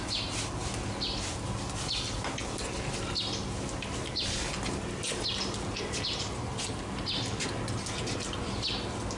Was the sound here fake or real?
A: real